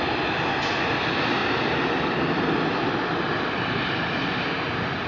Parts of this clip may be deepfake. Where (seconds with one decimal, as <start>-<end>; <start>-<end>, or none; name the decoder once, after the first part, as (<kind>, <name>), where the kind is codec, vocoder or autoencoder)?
none